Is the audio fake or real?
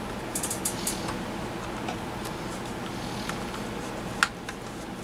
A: real